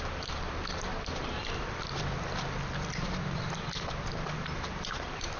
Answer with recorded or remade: remade